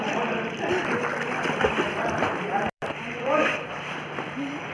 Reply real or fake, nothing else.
fake